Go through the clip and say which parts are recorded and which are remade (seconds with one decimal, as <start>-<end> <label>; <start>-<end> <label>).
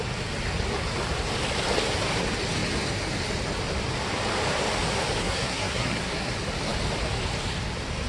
0.0-5.2 recorded; 5.2-6.3 remade; 6.3-8.1 recorded